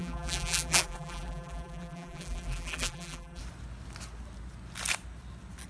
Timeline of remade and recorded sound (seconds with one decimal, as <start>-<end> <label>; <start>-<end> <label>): 0.0-3.4 remade; 3.4-5.7 recorded